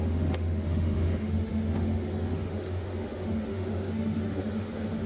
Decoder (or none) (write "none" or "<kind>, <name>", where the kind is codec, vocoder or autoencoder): autoencoder, DAC-VAE